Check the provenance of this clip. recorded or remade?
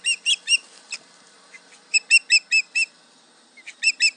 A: recorded